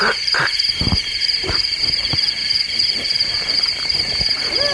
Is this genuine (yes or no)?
yes